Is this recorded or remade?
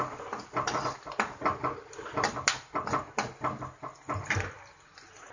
recorded